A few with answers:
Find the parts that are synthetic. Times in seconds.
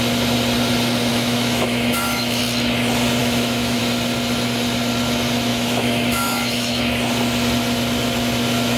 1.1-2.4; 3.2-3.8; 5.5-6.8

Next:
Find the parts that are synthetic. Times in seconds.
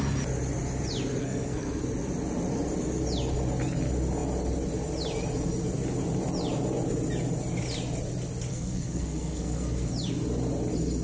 1.2-1.8; 8.5-9.9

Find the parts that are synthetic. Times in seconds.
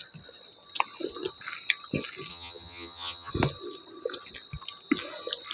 2.3-3.3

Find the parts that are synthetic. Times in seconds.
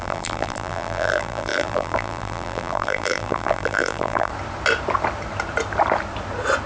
0.0-4.3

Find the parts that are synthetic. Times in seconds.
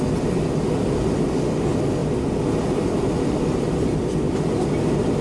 none